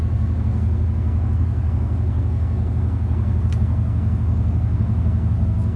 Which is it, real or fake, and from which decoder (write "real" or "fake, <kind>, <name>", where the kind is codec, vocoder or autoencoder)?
fake, codec, SNAC